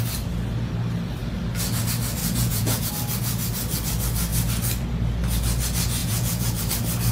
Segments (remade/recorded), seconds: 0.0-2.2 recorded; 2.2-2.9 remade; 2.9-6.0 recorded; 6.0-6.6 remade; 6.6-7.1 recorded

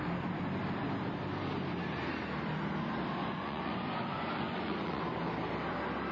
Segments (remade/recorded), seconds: 0.0-3.2 recorded; 3.2-5.0 remade; 5.0-6.1 recorded

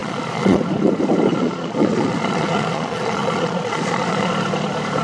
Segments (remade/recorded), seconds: 0.0-0.6 remade; 0.6-1.3 recorded; 1.3-4.3 remade; 4.3-5.0 recorded

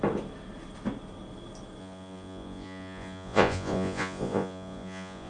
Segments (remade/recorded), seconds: 0.0-1.8 recorded; 1.8-5.3 remade

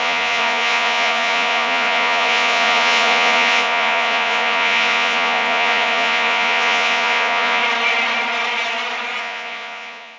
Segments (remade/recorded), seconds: 0.0-7.6 remade; 7.6-9.2 recorded; 9.2-10.2 remade

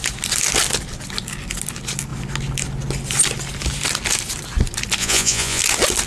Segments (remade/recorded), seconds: 0.0-5.0 recorded; 5.0-5.6 remade; 5.6-6.1 recorded

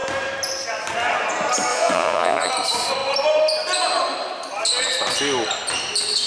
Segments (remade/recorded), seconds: 0.0-1.7 recorded; 1.7-2.5 remade; 2.5-6.3 recorded